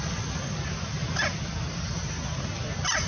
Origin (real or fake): real